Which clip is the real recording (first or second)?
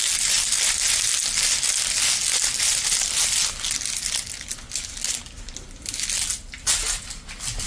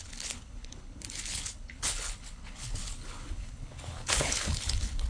first